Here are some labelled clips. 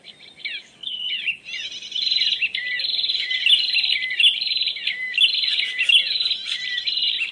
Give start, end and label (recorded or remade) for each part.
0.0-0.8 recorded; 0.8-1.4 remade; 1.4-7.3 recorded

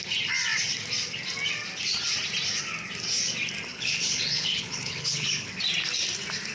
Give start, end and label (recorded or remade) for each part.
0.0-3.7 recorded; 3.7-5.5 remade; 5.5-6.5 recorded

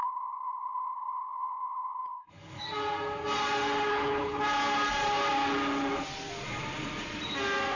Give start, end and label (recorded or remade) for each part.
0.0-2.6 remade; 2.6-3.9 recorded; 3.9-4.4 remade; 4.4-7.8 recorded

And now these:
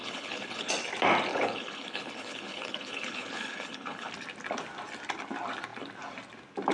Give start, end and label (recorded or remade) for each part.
0.0-0.7 remade; 0.7-1.3 recorded; 1.3-4.1 remade; 4.1-6.7 recorded

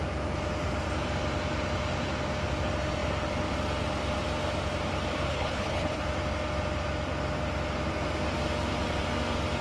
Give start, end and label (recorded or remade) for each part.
0.0-5.3 recorded; 5.3-6.0 remade; 6.0-9.6 recorded

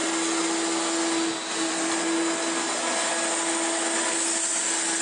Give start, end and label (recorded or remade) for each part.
0.0-5.0 recorded

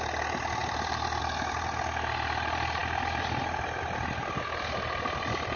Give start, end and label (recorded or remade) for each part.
0.0-5.6 recorded